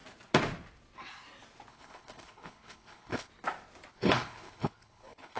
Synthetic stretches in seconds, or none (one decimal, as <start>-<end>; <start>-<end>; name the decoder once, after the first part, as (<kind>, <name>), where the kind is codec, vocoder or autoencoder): 1.7-3.3 (codec, HILCodec); 3.9-5.4